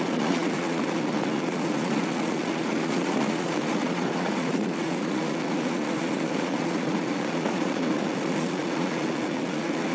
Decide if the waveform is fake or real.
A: fake